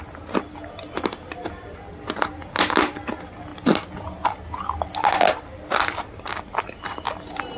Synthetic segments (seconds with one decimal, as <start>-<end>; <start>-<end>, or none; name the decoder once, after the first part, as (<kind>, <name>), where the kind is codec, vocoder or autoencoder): none